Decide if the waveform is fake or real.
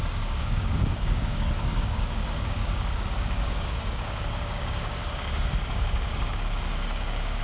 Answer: fake